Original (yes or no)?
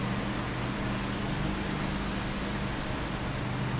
yes